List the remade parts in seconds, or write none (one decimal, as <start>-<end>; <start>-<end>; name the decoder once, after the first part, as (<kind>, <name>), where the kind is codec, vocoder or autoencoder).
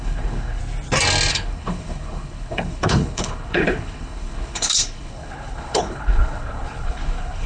0.0-0.6 (codec, HILCodec); 1.3-7.5